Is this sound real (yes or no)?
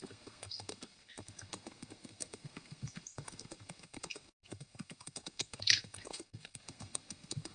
no